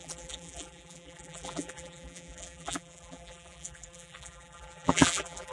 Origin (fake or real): fake